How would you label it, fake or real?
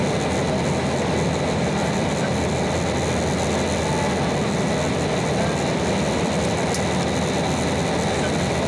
real